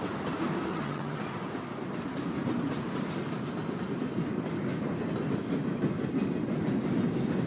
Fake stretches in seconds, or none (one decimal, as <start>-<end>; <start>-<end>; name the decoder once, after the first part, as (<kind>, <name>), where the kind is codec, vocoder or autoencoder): 0.7-1.2 (vocoder, HiFi-GAN)